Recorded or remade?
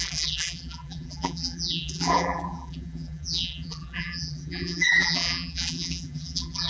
remade